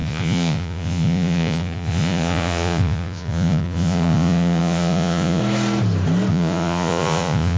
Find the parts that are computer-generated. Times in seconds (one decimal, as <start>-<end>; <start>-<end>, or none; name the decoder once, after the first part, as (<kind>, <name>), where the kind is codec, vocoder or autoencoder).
0.0-5.4 (vocoder, Vocos); 6.3-7.6